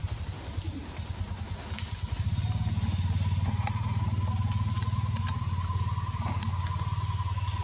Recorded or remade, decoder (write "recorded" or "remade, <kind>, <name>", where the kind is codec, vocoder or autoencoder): recorded